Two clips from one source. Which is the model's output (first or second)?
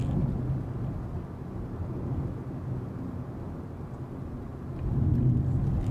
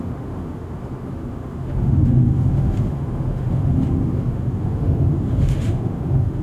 second